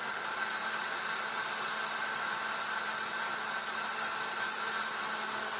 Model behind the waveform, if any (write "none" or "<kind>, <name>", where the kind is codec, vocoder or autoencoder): none